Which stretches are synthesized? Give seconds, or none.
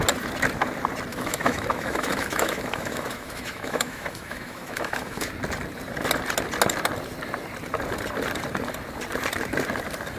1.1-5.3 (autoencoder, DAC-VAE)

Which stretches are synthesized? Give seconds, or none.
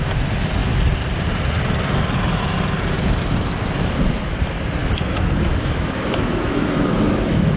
4.8-7.6 (autoencoder, DAC-VAE)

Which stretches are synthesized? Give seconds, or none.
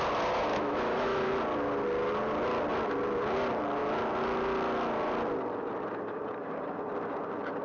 0.5-1.3 (autoencoder, DAC-VAE)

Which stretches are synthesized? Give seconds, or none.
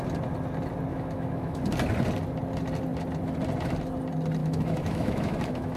0.9-1.6 (autoencoder, DAC-VAE); 4.4-5.8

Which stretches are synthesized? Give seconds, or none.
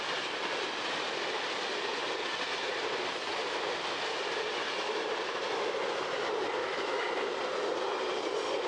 6.6-7.1 (autoencoder, DAC-VAE)